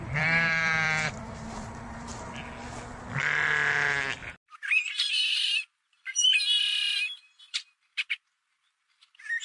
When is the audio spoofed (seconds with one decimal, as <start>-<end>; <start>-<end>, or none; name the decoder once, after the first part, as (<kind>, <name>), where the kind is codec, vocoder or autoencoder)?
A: 0.0-2.1 (vocoder, BigVGAN v2); 4.4-9.4